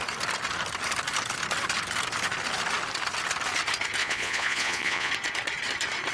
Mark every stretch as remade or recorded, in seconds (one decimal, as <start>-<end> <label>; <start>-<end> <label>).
0.0-4.0 recorded; 4.0-5.1 remade; 5.1-6.1 recorded